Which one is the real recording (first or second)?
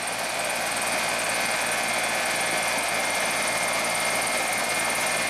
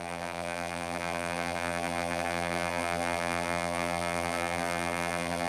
first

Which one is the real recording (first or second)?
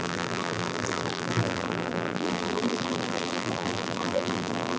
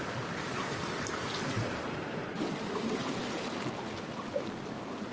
second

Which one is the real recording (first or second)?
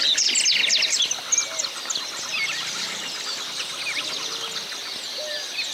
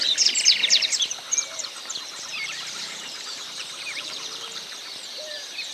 first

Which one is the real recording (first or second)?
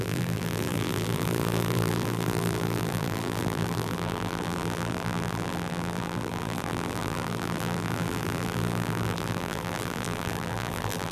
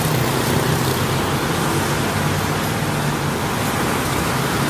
second